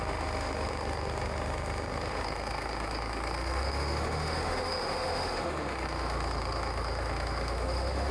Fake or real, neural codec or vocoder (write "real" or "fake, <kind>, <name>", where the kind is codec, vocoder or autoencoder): fake, autoencoder, DAC-VAE